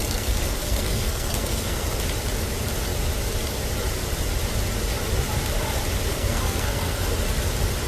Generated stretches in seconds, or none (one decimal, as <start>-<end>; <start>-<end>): 0.0-1.9; 6.1-7.0